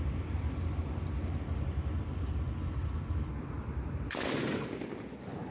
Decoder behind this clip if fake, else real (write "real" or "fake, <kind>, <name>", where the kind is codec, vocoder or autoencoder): real